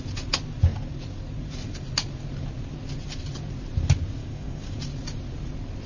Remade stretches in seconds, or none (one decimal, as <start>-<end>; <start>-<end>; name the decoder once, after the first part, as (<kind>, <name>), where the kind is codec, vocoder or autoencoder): 4.2-4.8 (codec, DAC)